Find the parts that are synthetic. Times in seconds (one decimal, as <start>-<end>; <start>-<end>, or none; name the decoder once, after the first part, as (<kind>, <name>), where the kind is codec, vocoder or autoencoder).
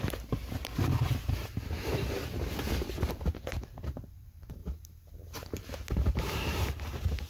0.0-2.2 (vocoder, BigVGAN v2); 3.0-7.3